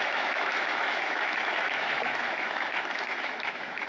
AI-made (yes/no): yes